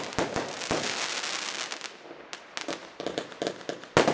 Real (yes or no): yes